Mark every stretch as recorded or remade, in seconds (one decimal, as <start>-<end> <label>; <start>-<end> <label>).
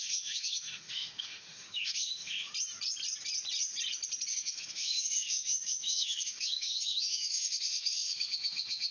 0.0-2.5 remade; 2.5-4.3 recorded; 4.3-8.9 remade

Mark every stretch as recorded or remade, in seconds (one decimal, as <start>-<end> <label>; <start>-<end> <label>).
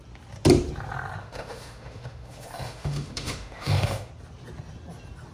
0.0-1.2 recorded; 1.2-4.1 remade; 4.1-5.3 recorded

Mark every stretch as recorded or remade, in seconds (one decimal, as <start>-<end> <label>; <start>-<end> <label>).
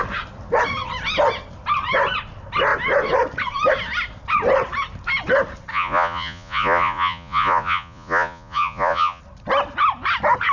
0.0-5.7 recorded; 5.7-9.2 remade; 9.2-10.5 recorded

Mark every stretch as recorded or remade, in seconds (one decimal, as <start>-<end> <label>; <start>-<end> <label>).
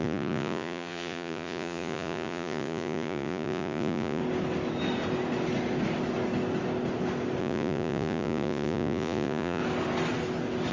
0.0-4.2 remade; 4.2-7.4 recorded; 7.4-9.6 remade; 9.6-10.7 recorded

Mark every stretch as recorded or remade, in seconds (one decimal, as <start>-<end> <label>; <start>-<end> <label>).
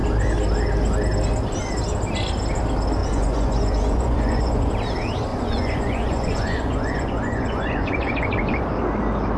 0.0-3.0 recorded; 3.0-4.7 remade; 4.7-5.3 recorded; 5.3-8.6 remade; 8.6-9.4 recorded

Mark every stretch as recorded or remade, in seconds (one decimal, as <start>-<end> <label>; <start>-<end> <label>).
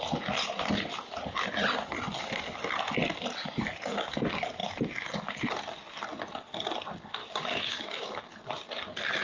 0.0-7.2 recorded; 7.2-8.2 remade; 8.2-9.2 recorded